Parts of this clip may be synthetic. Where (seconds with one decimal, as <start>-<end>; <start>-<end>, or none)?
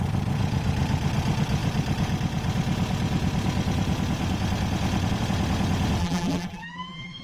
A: 6.0-7.2